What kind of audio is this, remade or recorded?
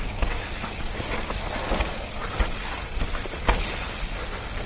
recorded